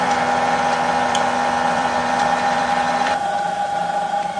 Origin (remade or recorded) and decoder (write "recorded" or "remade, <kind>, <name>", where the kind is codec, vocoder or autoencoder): remade, vocoder, BigVGAN v2